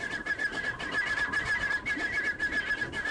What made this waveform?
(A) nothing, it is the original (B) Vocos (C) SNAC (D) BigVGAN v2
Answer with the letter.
A